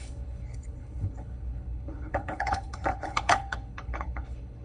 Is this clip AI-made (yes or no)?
yes